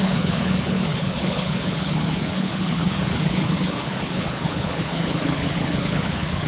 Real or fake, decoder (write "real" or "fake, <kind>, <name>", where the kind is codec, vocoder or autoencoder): fake, codec, HILCodec